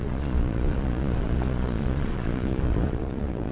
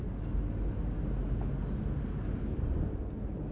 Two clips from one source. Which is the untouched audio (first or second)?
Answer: second